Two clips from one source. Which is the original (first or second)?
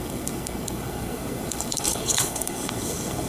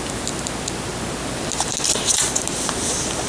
second